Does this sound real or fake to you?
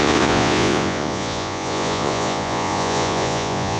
fake